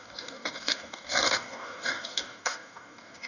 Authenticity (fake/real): fake